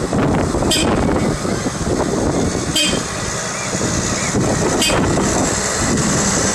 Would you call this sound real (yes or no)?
yes